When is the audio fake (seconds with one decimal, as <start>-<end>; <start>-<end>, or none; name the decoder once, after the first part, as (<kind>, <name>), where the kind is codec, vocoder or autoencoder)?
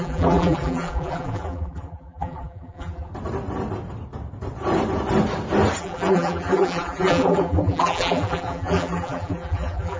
0.0-3.1 (vocoder, BigVGAN v2); 5.8-10.0